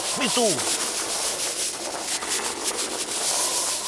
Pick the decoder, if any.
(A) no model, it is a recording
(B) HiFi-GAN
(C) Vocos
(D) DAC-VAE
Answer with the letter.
A